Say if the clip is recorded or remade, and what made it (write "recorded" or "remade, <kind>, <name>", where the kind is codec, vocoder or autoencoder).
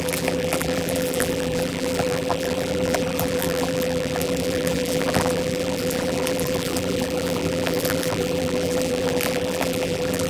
remade, vocoder, BigVGAN v2